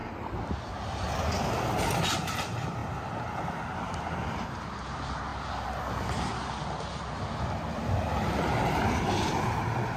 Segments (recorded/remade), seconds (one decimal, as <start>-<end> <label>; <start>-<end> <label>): 0.0-0.5 remade; 0.5-10.0 recorded